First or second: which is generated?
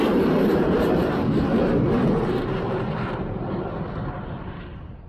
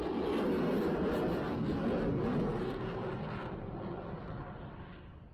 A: first